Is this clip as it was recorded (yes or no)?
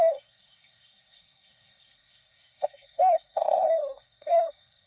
no